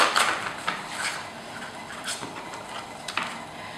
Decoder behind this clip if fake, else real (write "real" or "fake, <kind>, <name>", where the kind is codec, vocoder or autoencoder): real